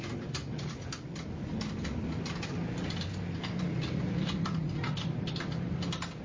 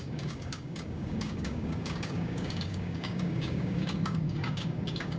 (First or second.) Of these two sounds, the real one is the first